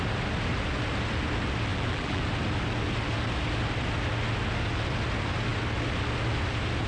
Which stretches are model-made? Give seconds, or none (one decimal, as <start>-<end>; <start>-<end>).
1.7-2.2